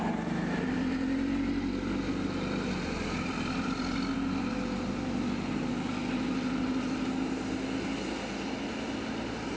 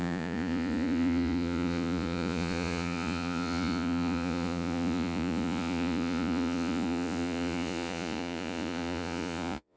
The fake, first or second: second